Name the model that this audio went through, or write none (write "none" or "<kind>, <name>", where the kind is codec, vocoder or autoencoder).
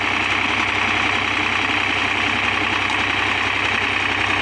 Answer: none